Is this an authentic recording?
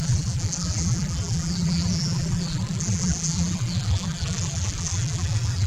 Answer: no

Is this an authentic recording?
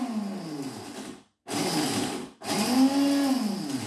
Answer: yes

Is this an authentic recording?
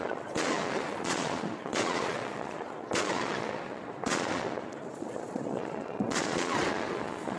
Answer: no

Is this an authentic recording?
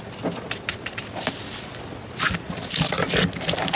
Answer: yes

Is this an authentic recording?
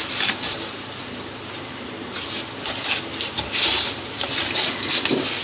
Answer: yes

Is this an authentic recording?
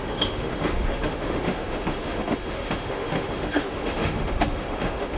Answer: no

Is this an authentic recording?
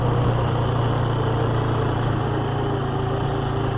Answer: yes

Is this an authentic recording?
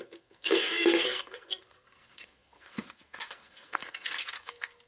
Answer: no